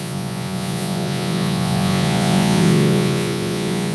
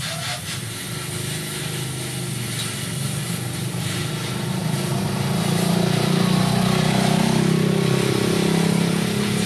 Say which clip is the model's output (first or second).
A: first